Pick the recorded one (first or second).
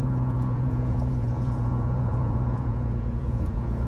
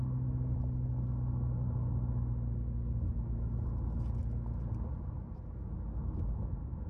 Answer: second